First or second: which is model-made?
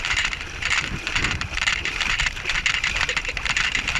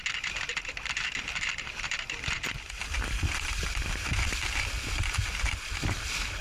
first